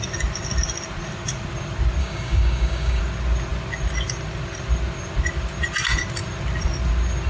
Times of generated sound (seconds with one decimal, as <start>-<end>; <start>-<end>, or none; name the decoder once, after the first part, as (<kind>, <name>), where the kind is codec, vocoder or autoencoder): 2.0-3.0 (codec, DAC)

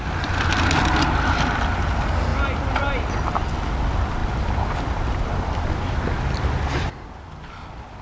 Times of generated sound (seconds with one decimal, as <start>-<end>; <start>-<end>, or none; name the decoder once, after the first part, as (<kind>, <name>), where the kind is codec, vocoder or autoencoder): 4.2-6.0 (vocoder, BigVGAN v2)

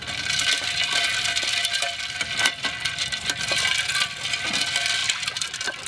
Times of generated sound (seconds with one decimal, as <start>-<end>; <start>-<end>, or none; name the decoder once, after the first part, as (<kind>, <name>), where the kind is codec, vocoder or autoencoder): none

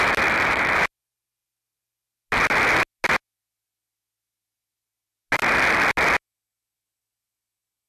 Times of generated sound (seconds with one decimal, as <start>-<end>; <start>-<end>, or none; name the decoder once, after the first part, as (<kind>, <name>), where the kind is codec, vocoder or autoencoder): none

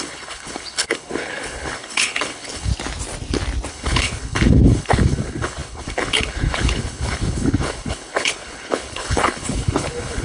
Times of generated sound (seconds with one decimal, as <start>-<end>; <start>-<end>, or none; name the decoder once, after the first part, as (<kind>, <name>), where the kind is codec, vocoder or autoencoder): 0.0-2.7 (codec, HILCodec); 3.7-10.2

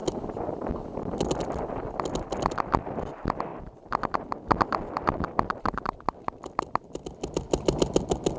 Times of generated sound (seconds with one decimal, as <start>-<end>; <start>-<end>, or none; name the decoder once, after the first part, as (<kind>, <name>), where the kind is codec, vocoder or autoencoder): none

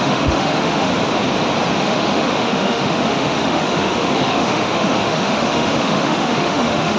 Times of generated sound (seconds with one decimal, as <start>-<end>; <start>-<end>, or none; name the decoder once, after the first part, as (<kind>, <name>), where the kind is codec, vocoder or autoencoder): 0.0-0.9 (autoencoder, DAC-VAE); 1.8-7.0

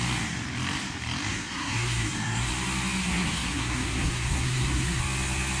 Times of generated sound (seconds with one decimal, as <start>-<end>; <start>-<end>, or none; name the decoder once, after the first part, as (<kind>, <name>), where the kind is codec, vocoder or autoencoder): 1.3-2.5 (codec, SNAC); 3.0-5.0